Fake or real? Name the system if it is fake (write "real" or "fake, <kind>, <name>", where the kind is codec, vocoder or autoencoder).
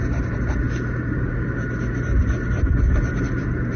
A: real